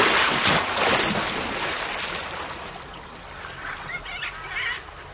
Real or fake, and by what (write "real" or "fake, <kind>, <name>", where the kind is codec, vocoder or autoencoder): real